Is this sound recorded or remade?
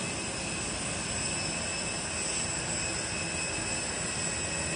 recorded